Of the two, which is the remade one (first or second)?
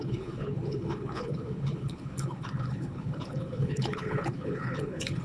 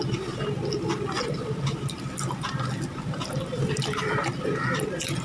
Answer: first